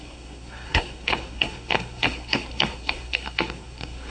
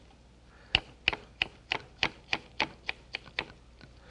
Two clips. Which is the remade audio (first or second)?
first